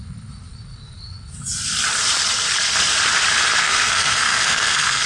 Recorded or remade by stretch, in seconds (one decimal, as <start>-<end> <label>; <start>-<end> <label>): 0.0-3.6 recorded; 3.6-5.1 remade